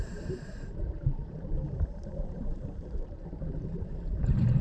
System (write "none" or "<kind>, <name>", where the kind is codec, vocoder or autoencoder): vocoder, BigVGAN v2